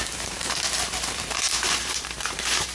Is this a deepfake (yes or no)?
yes